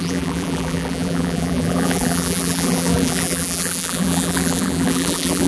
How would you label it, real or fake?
fake